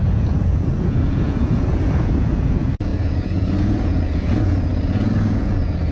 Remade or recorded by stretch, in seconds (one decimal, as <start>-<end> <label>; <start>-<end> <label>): 0.0-5.9 remade